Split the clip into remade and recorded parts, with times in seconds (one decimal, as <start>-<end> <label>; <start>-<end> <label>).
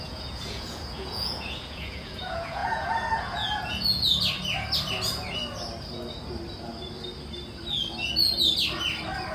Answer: 0.0-4.1 remade; 4.1-9.3 recorded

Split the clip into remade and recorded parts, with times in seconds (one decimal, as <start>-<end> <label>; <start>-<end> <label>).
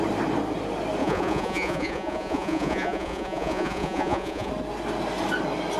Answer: 0.0-1.0 recorded; 1.0-4.5 remade; 4.5-5.8 recorded